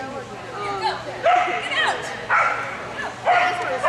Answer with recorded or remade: recorded